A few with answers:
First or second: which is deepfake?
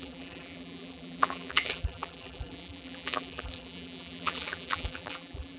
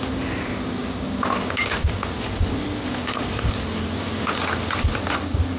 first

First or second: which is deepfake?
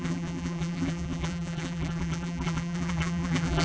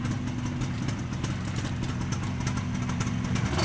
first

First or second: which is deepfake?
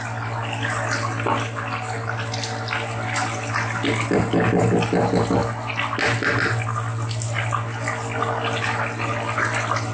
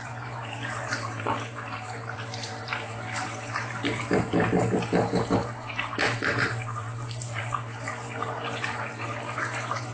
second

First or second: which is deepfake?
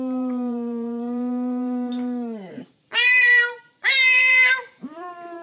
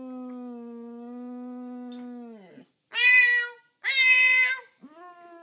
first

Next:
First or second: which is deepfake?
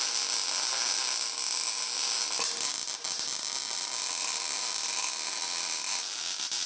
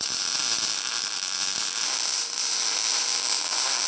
second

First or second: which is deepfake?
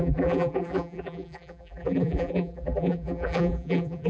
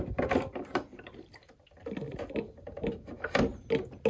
first